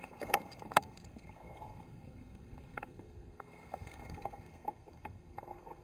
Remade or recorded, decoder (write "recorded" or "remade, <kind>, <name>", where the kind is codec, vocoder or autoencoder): remade, codec, SNAC